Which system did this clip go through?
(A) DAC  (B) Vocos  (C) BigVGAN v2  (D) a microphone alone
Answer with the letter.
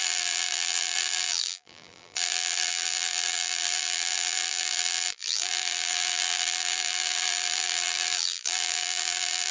C